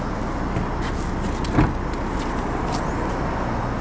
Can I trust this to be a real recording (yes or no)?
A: yes